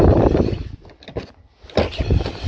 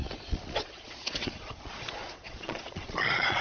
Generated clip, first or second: second